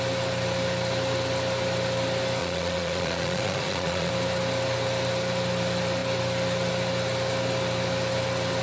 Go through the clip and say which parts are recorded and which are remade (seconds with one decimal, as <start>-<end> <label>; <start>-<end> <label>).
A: 0.0-2.4 recorded; 2.4-4.1 remade; 4.1-8.6 recorded